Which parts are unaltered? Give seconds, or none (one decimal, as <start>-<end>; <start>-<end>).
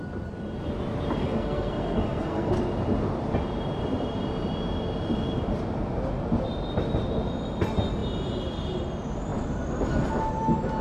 0.0-1.2; 2.5-10.8